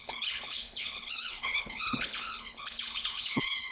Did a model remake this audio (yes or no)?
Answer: yes